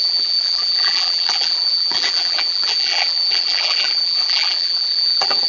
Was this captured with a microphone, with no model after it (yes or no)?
no